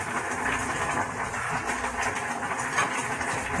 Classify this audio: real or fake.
real